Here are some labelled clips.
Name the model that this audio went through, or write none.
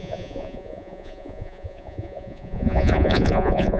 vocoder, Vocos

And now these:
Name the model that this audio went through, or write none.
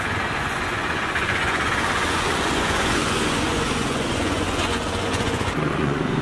vocoder, Vocos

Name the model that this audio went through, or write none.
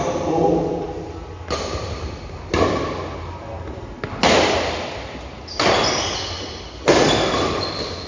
none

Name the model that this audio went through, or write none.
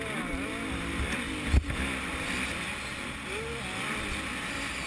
none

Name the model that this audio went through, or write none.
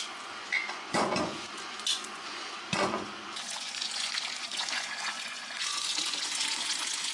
vocoder, Vocos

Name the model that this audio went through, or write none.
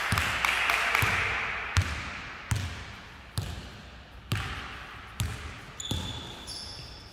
none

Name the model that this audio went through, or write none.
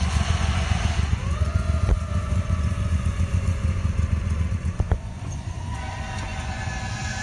vocoder, Vocos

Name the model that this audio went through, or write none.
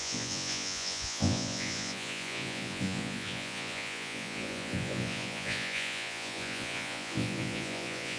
vocoder, Vocos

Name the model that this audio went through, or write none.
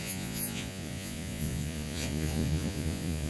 vocoder, Vocos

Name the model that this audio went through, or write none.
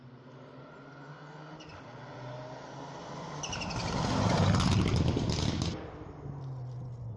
none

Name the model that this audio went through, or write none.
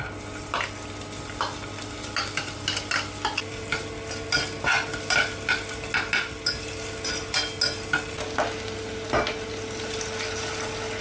none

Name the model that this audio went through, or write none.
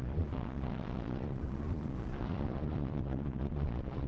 vocoder, Vocos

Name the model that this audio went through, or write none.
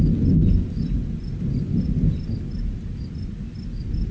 none